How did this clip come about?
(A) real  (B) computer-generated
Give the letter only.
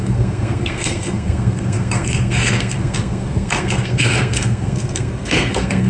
B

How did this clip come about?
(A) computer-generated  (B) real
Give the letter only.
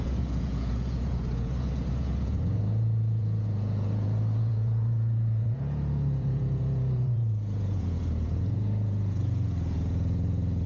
A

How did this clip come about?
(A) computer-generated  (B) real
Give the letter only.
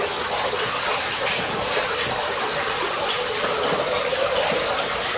B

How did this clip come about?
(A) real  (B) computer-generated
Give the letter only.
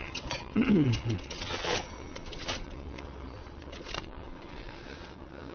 B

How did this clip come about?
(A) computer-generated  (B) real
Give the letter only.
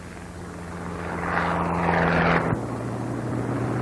B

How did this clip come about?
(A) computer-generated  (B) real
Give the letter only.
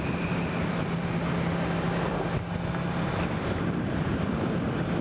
B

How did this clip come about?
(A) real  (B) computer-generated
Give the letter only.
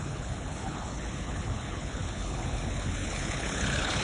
B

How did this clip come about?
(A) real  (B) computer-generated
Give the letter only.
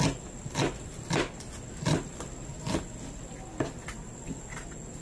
A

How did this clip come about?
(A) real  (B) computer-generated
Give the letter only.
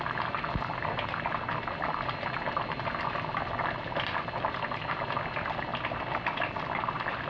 A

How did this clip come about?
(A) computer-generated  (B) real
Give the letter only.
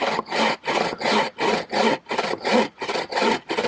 B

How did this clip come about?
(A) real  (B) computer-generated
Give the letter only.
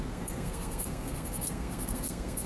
B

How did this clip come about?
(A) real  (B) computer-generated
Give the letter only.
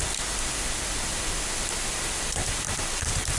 A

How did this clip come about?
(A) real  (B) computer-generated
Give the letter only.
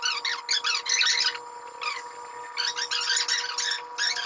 A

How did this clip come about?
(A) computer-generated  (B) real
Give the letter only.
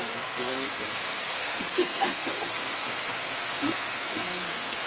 A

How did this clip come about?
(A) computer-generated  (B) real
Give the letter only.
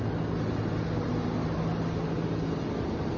B